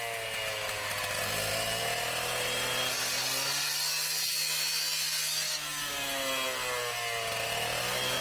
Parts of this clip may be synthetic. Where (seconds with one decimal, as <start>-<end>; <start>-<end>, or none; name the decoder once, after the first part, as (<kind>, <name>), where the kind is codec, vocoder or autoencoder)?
none